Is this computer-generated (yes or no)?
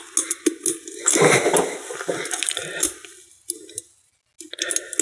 no